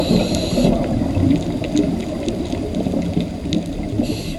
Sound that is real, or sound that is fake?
real